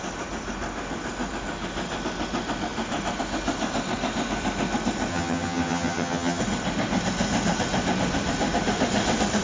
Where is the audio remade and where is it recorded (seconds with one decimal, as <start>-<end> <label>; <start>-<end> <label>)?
0.0-5.1 recorded; 5.1-6.4 remade; 6.4-9.4 recorded